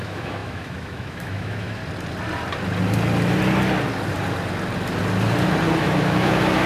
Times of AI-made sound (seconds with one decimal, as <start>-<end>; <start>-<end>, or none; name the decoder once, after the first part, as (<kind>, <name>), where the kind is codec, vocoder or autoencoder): 0.0-1.8 (autoencoder, DAC-VAE); 5.8-6.7